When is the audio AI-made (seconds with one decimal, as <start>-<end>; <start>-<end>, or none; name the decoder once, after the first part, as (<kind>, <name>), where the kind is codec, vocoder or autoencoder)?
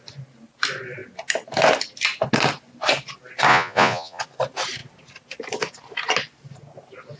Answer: 3.5-4.2 (vocoder, Vocos)